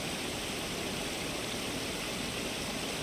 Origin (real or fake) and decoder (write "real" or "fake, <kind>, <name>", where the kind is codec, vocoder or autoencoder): real